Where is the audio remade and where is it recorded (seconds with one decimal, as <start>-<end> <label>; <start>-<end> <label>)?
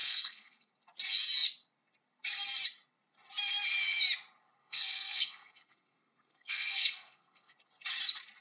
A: 0.0-0.7 remade; 0.7-4.6 recorded; 4.6-7.5 remade; 7.5-8.4 recorded